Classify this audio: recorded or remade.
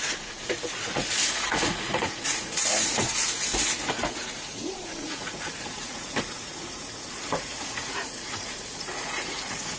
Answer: remade